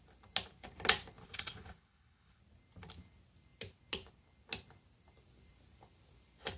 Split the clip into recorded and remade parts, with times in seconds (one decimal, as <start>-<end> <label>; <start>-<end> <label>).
0.0-1.2 recorded; 1.2-2.4 remade; 2.4-6.6 recorded